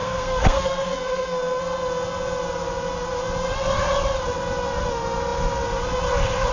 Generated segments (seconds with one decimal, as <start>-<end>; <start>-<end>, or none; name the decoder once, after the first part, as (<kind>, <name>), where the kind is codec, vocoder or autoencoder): 0.0-1.6 (codec, SNAC)